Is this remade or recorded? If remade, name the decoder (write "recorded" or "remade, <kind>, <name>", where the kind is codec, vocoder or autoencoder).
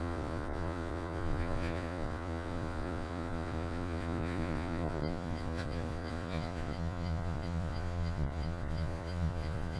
remade, vocoder, Vocos